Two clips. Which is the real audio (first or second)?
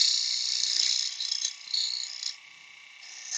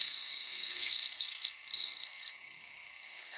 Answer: first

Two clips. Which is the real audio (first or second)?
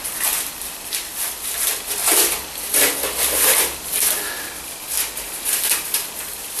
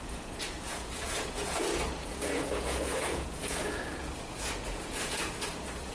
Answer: first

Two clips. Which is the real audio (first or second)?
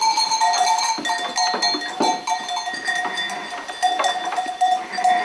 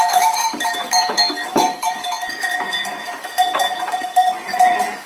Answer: first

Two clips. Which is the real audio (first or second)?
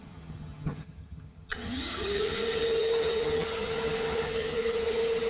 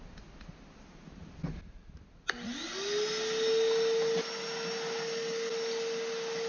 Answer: second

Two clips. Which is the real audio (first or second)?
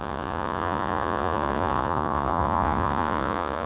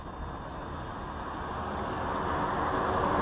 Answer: second